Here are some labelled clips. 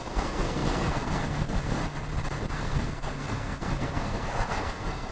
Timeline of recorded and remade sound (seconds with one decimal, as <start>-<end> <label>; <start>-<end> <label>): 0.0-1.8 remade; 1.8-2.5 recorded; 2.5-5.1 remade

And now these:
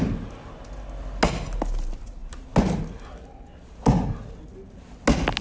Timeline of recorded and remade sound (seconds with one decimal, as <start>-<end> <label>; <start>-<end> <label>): 0.0-5.4 recorded

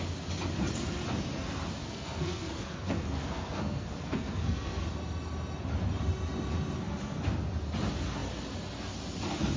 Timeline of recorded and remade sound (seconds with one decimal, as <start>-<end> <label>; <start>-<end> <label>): 0.0-1.8 recorded; 1.8-4.8 remade; 4.8-9.6 recorded